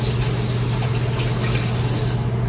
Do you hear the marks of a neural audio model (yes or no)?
no